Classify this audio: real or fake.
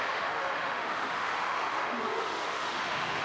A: fake